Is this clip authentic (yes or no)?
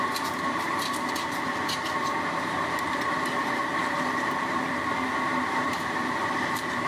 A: no